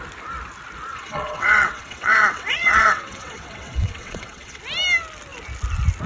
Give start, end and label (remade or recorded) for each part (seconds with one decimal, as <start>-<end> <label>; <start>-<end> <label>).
0.0-0.9 recorded; 0.9-4.6 remade; 4.6-6.1 recorded